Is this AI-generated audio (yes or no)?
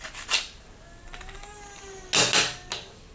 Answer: no